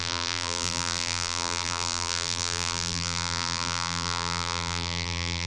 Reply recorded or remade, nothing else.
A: remade